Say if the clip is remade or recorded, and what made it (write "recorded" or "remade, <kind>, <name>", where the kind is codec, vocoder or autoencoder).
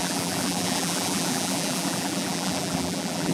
remade, vocoder, BigVGAN v2